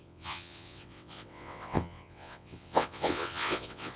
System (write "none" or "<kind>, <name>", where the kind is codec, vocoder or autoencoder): vocoder, WaveNeXt